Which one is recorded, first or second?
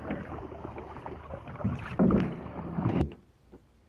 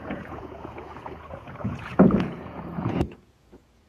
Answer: first